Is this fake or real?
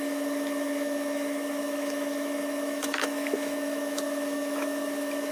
fake